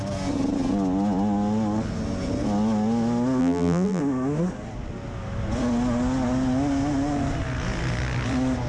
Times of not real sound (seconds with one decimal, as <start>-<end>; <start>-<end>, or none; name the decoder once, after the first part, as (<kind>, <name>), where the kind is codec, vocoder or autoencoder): 3.4-4.0 (vocoder, BigVGAN v2)